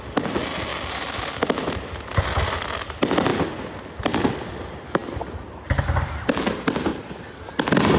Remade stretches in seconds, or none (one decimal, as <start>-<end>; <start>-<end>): 0.7-1.9; 6.9-7.4